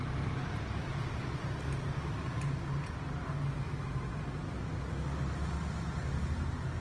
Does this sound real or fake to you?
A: real